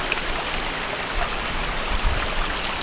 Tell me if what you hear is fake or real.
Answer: real